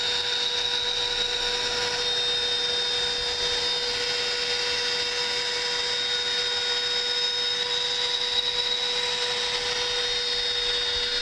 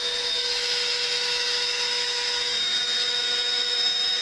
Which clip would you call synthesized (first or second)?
second